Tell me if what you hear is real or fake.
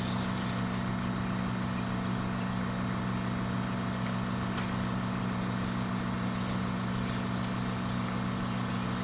real